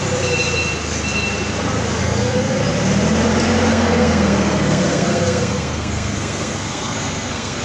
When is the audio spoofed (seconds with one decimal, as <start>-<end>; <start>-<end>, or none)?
2.0-2.6; 3.7-7.6